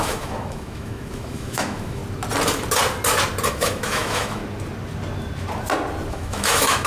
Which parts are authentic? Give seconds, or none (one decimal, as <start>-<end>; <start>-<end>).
2.0-3.5; 4.4-6.1